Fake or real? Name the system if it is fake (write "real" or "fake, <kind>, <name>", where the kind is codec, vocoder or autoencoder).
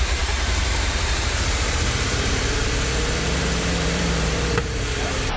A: fake, vocoder, BigVGAN v2